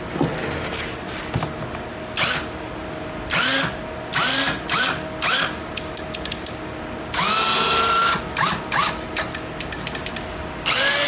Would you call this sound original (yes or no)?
yes